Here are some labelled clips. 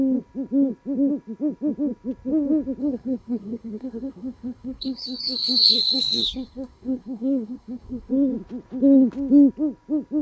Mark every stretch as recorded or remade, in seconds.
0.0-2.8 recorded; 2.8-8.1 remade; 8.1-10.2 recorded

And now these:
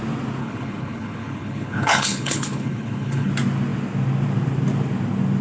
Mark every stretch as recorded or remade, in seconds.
0.0-0.4 recorded; 0.4-3.3 remade; 3.3-5.4 recorded

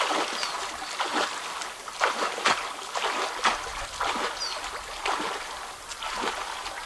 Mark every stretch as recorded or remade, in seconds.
0.0-6.9 recorded

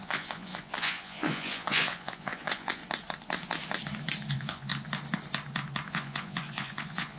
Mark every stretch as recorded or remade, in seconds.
0.0-2.8 remade; 2.8-4.3 recorded; 4.3-4.7 remade; 4.7-5.9 recorded; 5.9-7.2 remade

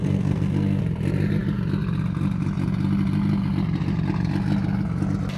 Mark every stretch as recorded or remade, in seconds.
0.0-0.8 remade; 0.8-5.4 recorded

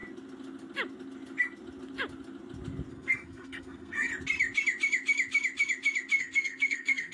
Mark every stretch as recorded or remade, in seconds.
0.0-2.9 recorded; 2.9-4.1 remade; 4.1-6.2 recorded; 6.2-7.1 remade

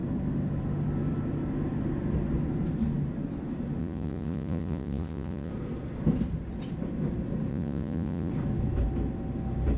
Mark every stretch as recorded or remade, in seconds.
0.0-3.8 recorded; 3.8-5.5 remade; 5.5-7.5 recorded; 7.5-8.3 remade; 8.3-9.8 recorded